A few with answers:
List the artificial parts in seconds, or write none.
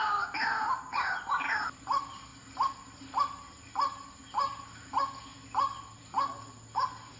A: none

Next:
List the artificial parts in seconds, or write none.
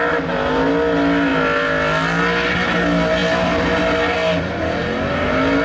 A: none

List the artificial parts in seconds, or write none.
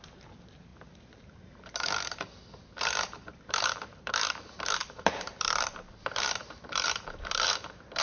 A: 0.0-8.0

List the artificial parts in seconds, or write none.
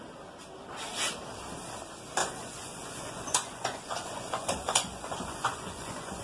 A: 2.2-6.2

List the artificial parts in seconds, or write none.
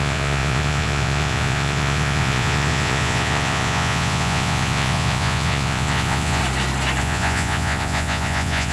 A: 0.0-6.4; 7.0-8.7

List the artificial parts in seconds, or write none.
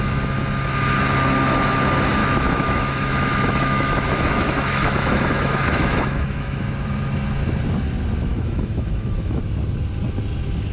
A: 2.2-6.6; 8.3-9.4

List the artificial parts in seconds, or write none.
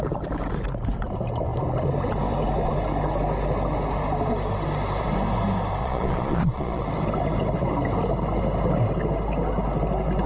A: 5.8-6.8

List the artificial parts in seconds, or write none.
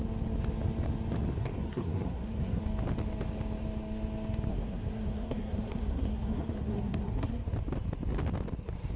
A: 1.3-2.6; 4.5-7.5